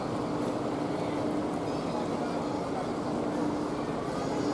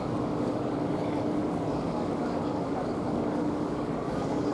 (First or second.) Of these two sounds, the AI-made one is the second